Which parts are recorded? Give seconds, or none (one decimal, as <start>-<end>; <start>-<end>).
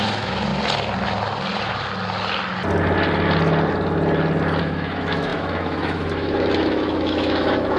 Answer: 0.5-4.6